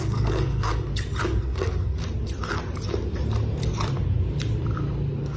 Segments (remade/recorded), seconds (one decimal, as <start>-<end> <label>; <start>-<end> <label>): 0.0-0.9 remade; 0.9-1.4 recorded; 1.4-2.0 remade; 2.0-5.4 recorded